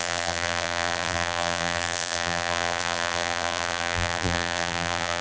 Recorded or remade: remade